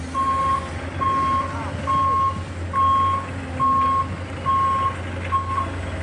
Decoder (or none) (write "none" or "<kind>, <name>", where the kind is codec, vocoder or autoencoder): none